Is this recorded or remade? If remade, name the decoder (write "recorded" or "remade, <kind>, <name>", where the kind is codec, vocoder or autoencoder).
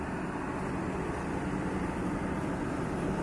recorded